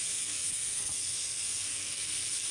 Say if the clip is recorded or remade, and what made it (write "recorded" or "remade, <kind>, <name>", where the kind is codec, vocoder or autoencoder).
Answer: remade, codec, SNAC